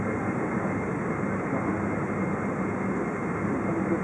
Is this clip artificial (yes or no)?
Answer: no